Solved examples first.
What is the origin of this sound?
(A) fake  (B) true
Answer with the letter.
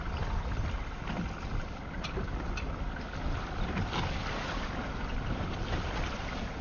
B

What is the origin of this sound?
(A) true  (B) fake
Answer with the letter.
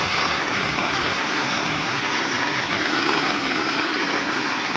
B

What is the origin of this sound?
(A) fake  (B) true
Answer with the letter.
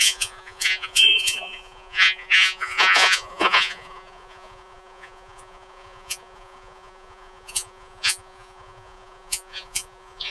A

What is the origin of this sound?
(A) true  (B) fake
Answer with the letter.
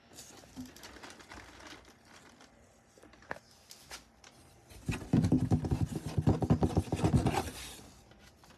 A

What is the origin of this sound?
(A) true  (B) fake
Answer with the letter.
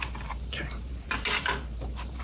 B